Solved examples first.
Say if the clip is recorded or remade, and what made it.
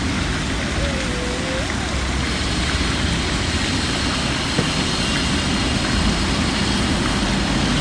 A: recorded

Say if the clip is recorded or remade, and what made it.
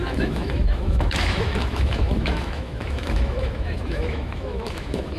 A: remade, autoencoder, DAC-VAE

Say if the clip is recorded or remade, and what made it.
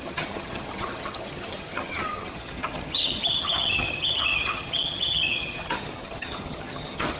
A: remade, vocoder, HiFi-GAN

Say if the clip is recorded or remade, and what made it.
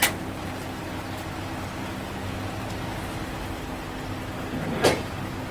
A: recorded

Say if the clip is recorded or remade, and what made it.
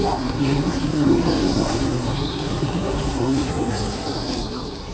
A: remade, codec, SNAC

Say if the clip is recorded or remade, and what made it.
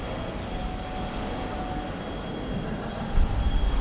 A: recorded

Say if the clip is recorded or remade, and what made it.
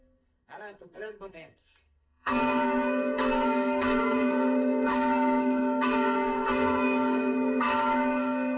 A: remade, codec, SNAC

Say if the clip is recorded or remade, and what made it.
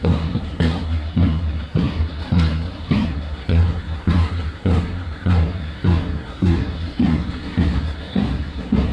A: remade, codec, SNAC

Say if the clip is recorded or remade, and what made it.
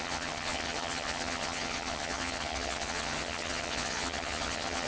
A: remade, vocoder, HiFi-GAN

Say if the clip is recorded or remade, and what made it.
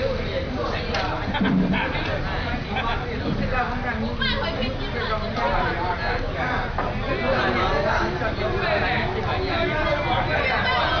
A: recorded